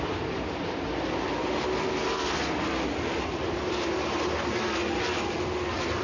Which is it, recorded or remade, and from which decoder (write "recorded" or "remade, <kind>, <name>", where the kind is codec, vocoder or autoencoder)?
recorded